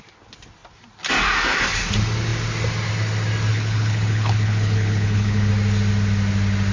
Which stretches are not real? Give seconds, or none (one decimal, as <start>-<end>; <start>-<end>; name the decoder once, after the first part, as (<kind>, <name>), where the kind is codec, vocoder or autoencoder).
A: 3.5-5.5 (codec, HILCodec)